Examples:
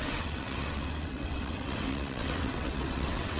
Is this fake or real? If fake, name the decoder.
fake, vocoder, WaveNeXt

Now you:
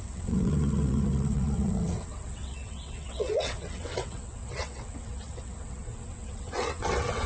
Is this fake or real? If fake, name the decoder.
fake, vocoder, WaveNeXt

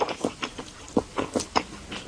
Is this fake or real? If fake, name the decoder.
real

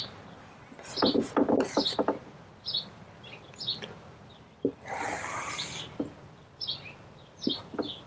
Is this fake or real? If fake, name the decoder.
real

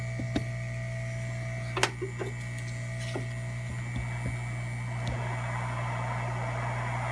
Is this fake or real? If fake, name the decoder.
real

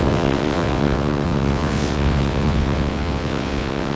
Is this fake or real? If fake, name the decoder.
fake, vocoder, WaveNeXt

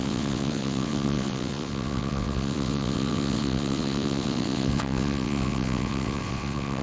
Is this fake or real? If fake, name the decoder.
fake, vocoder, WaveNeXt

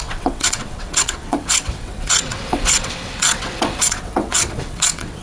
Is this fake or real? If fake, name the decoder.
fake, vocoder, WaveNeXt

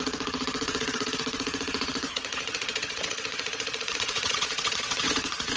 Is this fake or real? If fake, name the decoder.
fake, vocoder, WaveNeXt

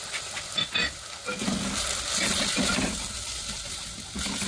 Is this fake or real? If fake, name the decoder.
real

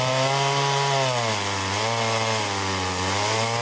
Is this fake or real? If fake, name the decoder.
real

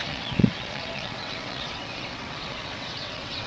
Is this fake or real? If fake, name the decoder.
fake, vocoder, WaveNeXt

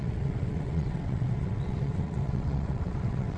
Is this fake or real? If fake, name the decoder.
fake, vocoder, WaveNeXt